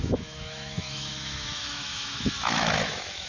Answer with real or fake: fake